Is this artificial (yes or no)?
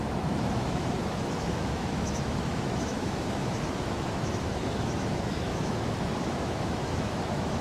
yes